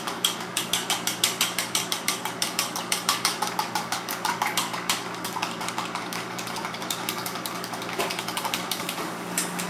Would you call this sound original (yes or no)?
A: no